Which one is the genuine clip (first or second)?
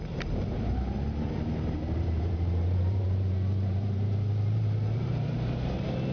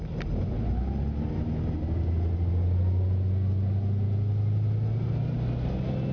second